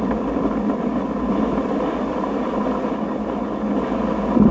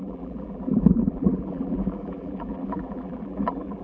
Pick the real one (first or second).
first